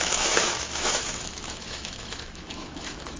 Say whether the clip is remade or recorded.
remade